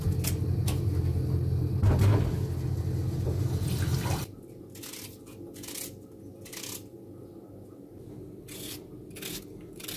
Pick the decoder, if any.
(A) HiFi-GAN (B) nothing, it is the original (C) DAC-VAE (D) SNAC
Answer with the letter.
B